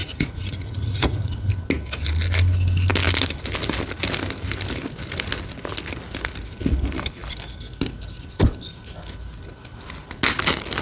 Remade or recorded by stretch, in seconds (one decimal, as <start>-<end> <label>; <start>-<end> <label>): 0.0-1.5 remade; 1.5-10.8 recorded